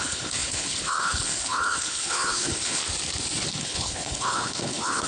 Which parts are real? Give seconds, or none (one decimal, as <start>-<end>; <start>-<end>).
2.8-3.6